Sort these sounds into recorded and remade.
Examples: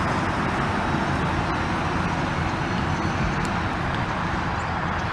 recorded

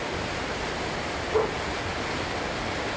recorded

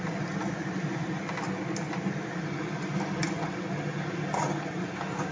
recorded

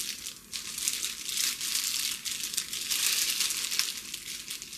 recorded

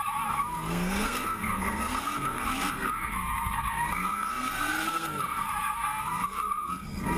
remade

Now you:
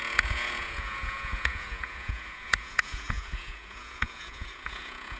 remade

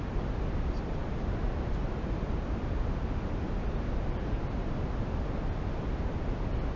recorded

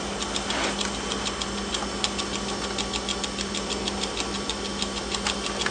remade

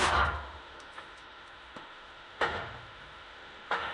remade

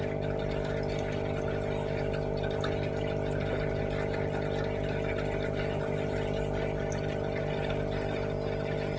recorded